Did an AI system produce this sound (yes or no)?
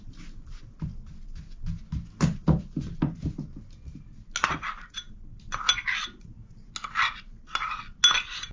no